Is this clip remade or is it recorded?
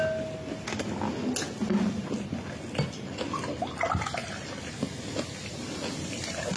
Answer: recorded